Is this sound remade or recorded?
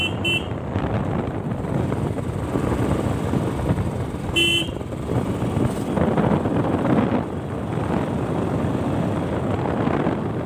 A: recorded